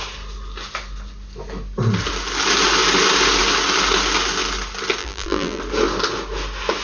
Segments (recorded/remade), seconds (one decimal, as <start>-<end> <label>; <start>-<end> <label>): 0.0-5.0 recorded; 5.0-5.6 remade; 5.6-6.8 recorded